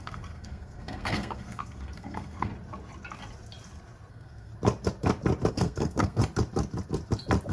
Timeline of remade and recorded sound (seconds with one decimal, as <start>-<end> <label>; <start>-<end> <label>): 0.0-2.5 remade; 2.5-4.1 recorded; 4.1-4.5 remade; 4.5-5.5 recorded; 5.5-6.2 remade; 6.2-7.5 recorded